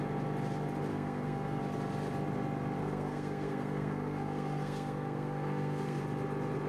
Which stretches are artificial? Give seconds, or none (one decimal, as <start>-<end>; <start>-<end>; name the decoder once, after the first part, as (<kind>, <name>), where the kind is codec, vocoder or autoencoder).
0.9-1.6 (codec, SNAC); 2.8-6.0